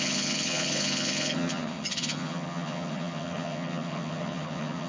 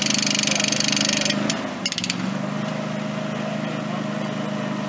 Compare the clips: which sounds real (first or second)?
second